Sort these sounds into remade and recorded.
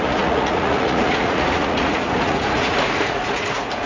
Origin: remade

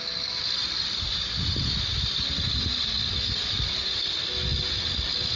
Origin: recorded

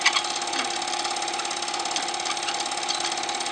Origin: recorded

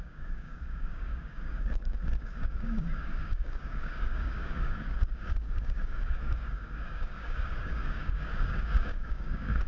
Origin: remade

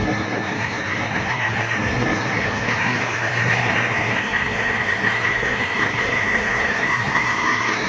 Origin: remade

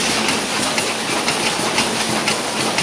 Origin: recorded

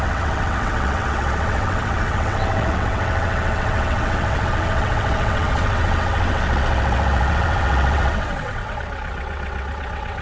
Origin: remade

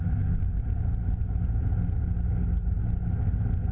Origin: recorded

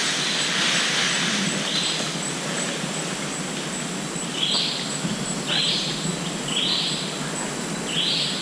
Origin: recorded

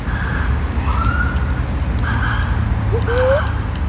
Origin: recorded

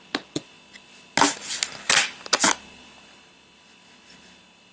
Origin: recorded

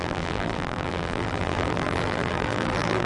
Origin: remade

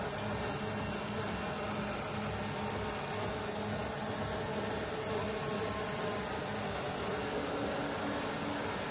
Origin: recorded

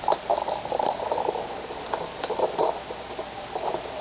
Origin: recorded